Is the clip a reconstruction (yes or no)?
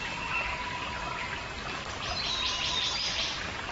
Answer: no